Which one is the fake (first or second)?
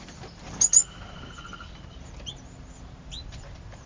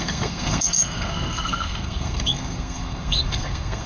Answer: second